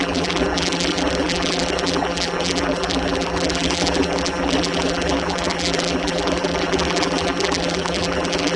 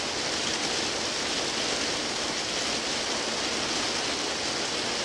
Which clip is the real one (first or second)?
second